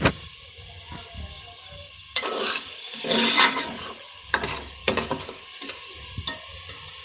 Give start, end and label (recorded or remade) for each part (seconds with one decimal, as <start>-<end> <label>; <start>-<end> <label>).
0.0-1.3 recorded; 1.3-3.7 remade; 3.7-4.8 recorded; 4.8-5.9 remade; 5.9-7.0 recorded